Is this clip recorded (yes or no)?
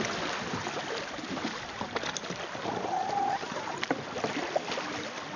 yes